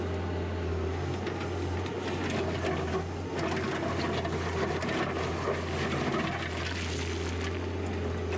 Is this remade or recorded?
recorded